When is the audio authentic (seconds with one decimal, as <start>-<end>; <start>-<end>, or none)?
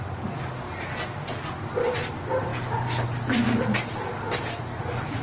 0.0-5.2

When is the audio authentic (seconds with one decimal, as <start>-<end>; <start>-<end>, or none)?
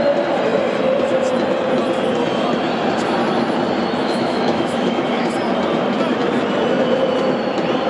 0.0-4.0; 5.3-7.9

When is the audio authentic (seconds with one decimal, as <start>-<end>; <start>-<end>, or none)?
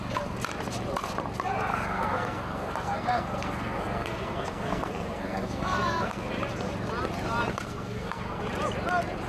0.0-1.7; 6.3-7.5; 8.4-9.3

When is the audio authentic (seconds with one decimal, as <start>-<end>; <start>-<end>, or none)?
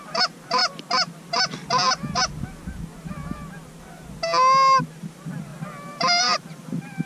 0.6-4.9; 5.5-6.2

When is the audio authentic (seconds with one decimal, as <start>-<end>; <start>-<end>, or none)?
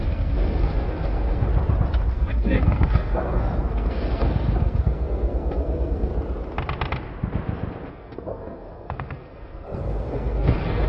1.5-2.1; 6.1-7.9